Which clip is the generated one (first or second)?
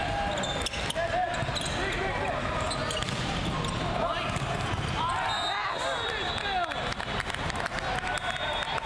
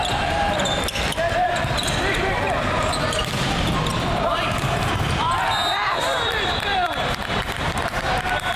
second